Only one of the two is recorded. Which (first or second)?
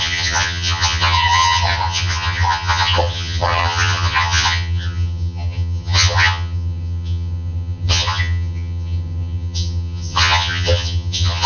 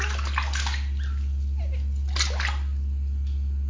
second